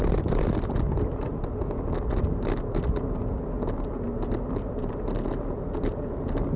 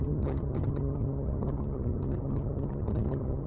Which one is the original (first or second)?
first